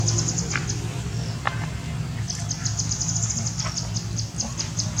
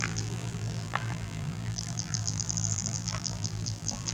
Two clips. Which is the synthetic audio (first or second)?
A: second